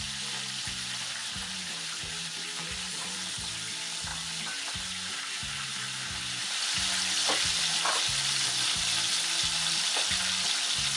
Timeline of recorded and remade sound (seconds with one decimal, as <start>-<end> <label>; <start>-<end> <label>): 0.0-1.2 recorded; 1.2-3.5 remade; 3.5-11.0 recorded